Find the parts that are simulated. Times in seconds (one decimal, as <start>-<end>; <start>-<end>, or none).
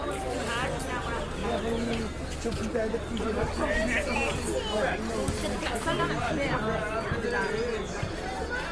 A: none